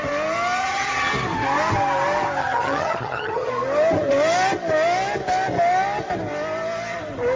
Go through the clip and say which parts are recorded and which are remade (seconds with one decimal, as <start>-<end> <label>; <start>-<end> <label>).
0.0-0.6 recorded; 0.6-1.1 remade; 1.1-2.4 recorded; 2.4-3.5 remade; 3.5-7.4 recorded

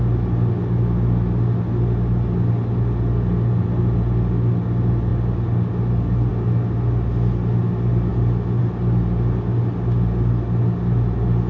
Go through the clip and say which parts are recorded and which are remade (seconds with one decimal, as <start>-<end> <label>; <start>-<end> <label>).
0.0-11.5 recorded